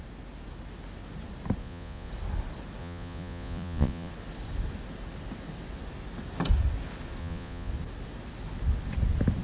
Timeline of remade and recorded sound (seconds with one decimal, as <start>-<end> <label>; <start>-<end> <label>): 0.0-1.6 recorded; 1.6-2.1 remade; 2.1-2.8 recorded; 2.8-4.1 remade; 4.1-7.2 recorded; 7.2-7.7 remade; 7.7-9.4 recorded